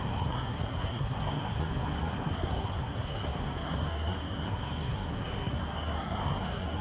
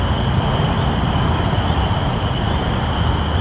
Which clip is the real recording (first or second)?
second